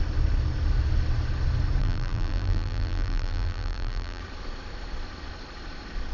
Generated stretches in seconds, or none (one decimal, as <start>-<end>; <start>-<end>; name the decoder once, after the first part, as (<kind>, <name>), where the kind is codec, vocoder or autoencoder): 1.8-4.2 (vocoder, BigVGAN v2)